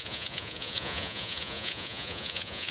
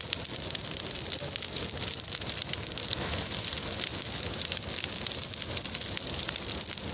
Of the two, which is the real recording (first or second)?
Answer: second